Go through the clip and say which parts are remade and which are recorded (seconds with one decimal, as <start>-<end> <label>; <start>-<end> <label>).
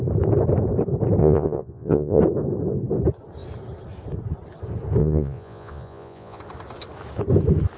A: 0.0-1.2 recorded; 1.2-2.2 remade; 2.2-5.0 recorded; 5.0-6.4 remade; 6.4-7.8 recorded